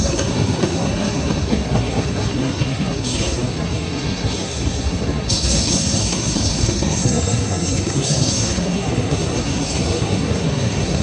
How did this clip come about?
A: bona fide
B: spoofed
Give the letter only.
B